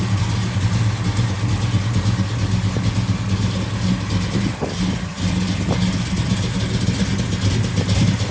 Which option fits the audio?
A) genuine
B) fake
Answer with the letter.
A